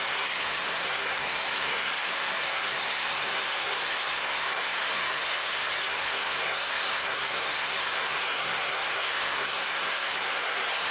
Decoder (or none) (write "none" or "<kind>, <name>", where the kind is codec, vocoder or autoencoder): codec, SNAC